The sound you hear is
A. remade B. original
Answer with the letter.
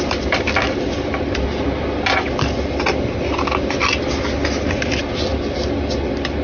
B